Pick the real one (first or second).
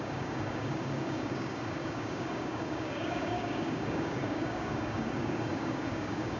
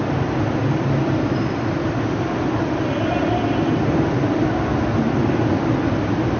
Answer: second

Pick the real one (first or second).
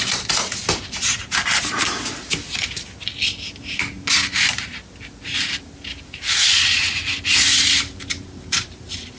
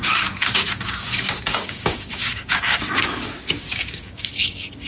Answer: first